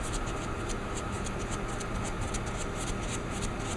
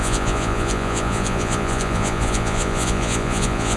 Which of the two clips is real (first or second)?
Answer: first